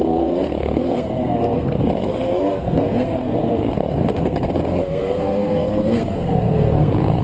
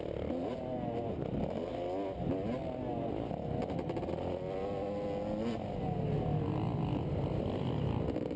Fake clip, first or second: first